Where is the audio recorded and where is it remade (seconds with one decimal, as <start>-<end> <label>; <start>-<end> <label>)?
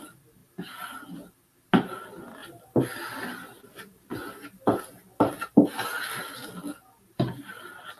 0.0-8.0 recorded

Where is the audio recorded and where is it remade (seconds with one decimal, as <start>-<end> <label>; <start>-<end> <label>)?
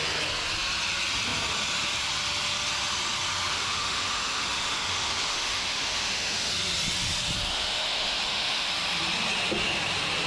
0.0-3.5 recorded; 3.5-6.5 remade; 6.5-7.5 recorded; 7.5-8.7 remade; 8.7-10.3 recorded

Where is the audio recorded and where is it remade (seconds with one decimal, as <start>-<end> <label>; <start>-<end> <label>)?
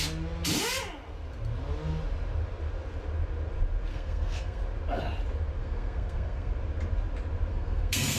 0.0-3.9 recorded; 3.9-4.6 remade; 4.6-5.6 recorded; 5.6-6.5 remade; 6.5-7.5 recorded; 7.5-8.2 remade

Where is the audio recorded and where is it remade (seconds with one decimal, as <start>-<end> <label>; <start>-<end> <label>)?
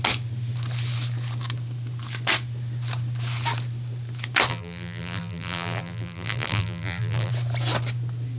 0.0-4.5 recorded; 4.5-7.3 remade; 7.3-8.4 recorded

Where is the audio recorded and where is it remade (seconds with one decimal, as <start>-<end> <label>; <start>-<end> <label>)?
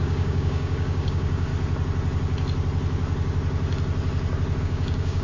0.0-1.5 remade; 1.5-4.6 recorded; 4.6-5.2 remade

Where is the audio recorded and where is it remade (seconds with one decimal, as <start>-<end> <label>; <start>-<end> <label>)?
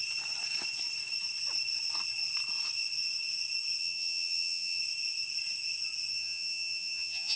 0.0-3.8 recorded; 3.8-4.8 remade; 4.8-6.1 recorded; 6.1-7.4 remade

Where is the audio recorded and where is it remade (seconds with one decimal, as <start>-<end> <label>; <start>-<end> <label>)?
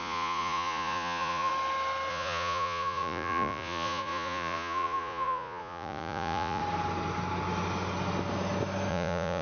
0.0-1.5 remade; 1.5-2.1 recorded; 2.1-6.6 remade; 6.6-8.9 recorded; 8.9-9.4 remade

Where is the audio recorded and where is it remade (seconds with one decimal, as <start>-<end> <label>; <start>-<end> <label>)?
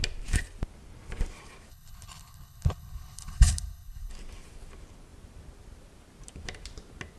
0.0-1.7 recorded; 1.7-4.1 remade; 4.1-7.2 recorded